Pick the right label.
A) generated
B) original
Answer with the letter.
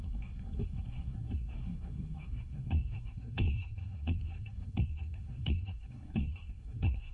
A